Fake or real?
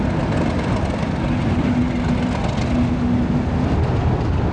real